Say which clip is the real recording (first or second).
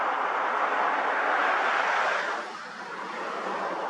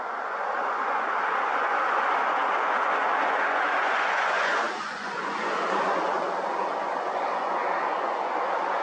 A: first